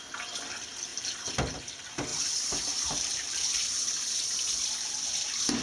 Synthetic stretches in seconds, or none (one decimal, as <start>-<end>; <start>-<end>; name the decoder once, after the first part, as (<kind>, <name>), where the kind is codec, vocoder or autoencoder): 2.1-5.6 (vocoder, BigVGAN v2)